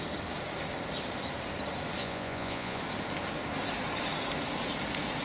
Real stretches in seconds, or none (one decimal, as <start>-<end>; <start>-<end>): 0.0-2.0; 2.8-5.2